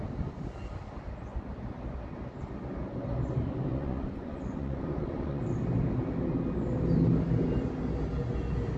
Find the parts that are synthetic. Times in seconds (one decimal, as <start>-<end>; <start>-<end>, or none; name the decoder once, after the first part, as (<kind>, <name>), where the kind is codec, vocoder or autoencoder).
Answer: 3.7-5.4 (vocoder, Vocos)